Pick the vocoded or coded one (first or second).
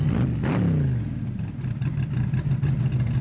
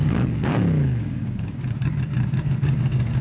second